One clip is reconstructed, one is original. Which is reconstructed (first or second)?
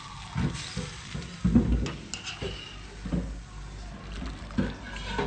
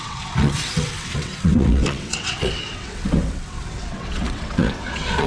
second